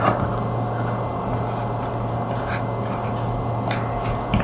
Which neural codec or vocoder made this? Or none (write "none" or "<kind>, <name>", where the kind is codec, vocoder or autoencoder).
none